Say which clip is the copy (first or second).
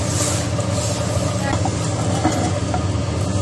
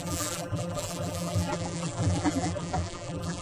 second